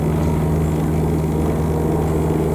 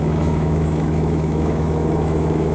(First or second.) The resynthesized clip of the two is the second